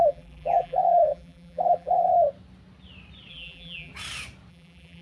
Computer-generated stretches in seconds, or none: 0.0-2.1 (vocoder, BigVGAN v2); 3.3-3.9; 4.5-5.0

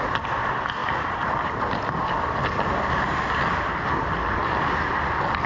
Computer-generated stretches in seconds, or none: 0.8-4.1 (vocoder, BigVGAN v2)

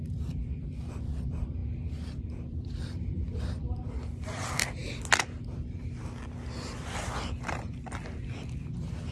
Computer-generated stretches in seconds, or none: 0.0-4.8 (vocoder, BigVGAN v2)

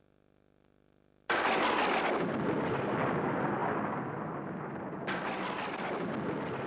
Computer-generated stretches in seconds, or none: none